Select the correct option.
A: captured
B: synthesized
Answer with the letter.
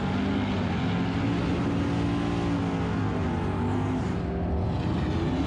A